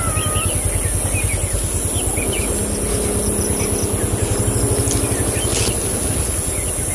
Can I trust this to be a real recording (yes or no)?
yes